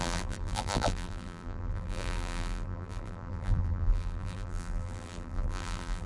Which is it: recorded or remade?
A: remade